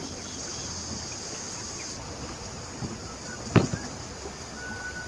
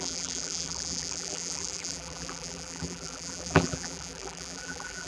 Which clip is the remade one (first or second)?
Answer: second